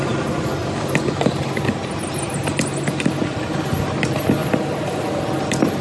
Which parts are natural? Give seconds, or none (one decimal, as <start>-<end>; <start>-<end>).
0.0-5.8

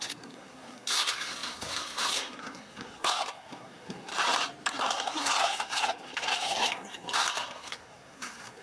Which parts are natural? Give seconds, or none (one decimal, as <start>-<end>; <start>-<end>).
4.1-4.7

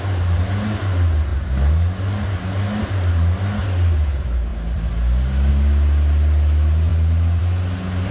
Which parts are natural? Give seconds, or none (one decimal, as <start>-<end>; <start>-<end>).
0.0-8.1

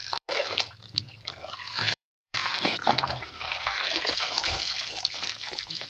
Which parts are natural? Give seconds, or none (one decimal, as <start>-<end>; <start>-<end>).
none

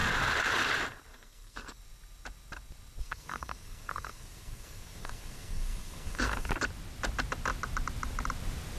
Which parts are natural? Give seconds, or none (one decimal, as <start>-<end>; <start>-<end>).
0.0-1.1; 1.8-3.0; 6.5-8.8

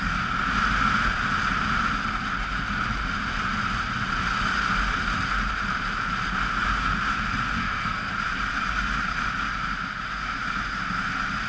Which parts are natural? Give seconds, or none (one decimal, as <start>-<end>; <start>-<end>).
0.0-7.6; 8.1-11.5